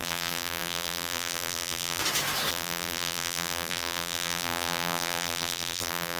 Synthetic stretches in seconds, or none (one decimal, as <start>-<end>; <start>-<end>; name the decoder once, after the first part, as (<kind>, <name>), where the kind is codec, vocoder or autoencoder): 0.0-2.0 (vocoder, BigVGAN v2); 2.5-6.2